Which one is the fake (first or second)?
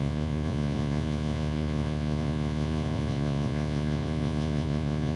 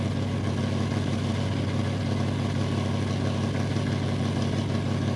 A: first